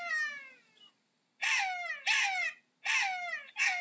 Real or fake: real